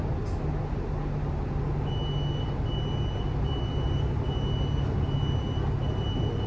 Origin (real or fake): real